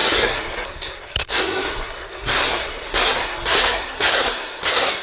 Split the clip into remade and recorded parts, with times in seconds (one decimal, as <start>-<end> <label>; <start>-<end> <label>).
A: 0.0-5.0 remade